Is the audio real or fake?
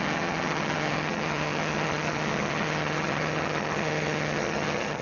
fake